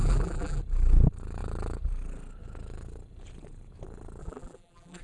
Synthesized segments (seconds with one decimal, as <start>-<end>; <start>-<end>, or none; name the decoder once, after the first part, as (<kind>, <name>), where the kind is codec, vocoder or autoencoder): 0.0-0.6 (vocoder, BigVGAN v2); 4.2-5.0